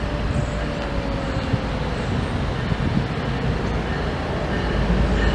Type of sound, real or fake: real